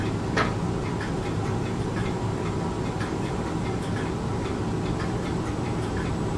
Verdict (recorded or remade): recorded